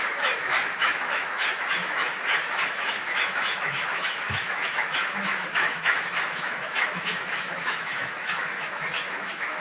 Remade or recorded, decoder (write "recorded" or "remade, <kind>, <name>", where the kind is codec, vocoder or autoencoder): remade, autoencoder, DAC-VAE